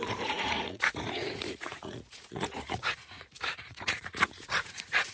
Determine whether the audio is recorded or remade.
remade